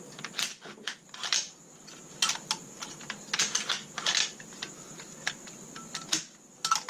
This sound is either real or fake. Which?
real